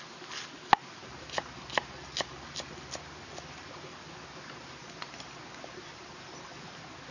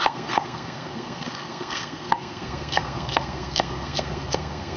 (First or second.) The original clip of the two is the first